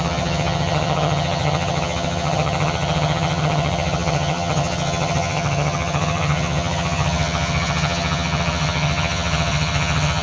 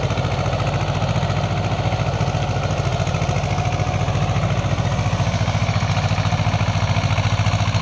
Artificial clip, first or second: first